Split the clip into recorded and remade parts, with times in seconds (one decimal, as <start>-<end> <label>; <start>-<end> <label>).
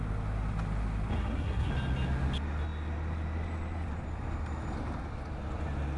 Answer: 0.0-1.2 recorded; 1.2-1.7 remade; 1.7-6.0 recorded